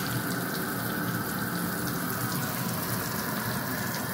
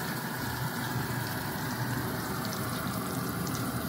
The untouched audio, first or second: first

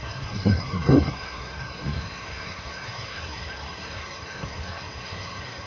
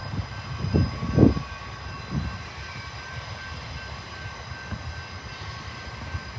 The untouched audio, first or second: second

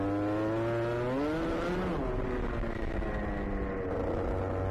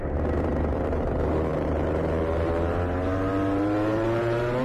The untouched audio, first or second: first